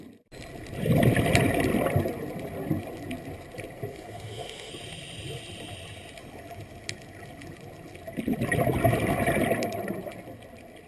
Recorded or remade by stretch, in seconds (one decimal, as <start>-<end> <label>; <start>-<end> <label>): 0.0-3.9 recorded; 3.9-4.7 remade; 4.7-10.9 recorded